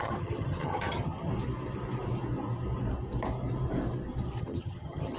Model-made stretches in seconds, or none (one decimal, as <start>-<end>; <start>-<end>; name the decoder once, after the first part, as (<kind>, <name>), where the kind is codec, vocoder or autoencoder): 0.0-1.3 (vocoder, HiFi-GAN); 4.4-5.2